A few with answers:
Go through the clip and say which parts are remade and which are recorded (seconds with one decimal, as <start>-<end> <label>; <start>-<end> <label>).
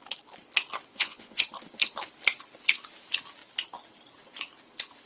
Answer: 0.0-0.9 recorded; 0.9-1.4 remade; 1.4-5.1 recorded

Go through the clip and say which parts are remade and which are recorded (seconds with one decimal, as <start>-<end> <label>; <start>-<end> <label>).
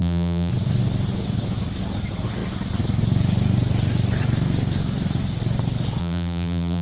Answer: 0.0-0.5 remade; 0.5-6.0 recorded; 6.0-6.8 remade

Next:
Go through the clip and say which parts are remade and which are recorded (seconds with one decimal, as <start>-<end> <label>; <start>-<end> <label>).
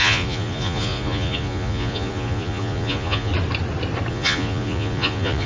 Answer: 0.0-3.3 remade; 3.3-4.1 recorded; 4.1-5.5 remade